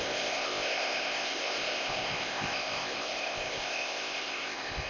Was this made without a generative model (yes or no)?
no